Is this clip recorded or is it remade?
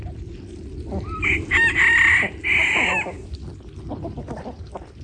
recorded